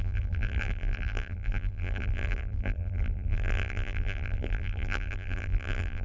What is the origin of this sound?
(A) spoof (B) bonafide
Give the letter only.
A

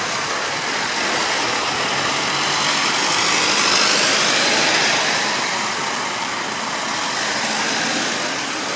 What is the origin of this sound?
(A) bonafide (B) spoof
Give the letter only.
B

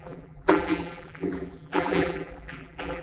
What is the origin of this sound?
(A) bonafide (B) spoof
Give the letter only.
B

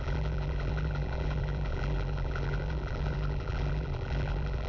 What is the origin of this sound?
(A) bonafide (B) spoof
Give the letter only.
B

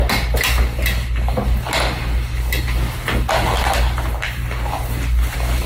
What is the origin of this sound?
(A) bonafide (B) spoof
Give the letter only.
A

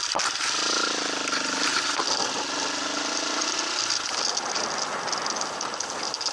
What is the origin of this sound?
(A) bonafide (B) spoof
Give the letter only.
A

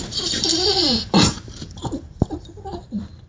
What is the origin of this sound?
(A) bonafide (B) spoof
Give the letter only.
B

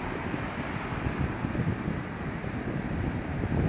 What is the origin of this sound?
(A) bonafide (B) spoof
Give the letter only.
A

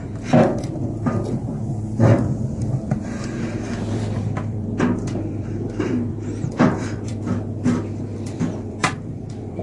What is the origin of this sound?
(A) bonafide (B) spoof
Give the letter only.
B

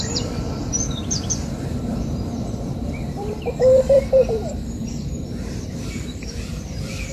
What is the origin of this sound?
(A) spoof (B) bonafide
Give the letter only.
A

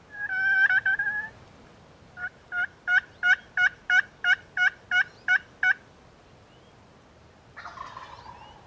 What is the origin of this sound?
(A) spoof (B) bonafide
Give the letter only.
B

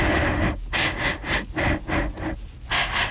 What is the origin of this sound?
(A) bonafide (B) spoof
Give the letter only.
A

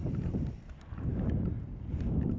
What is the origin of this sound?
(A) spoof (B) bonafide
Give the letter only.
A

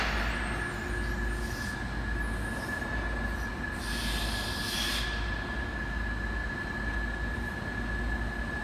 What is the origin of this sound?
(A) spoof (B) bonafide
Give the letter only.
B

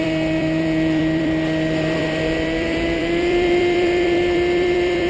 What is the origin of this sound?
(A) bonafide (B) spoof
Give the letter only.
B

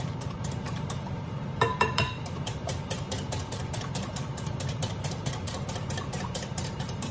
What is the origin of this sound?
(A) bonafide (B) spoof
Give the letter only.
B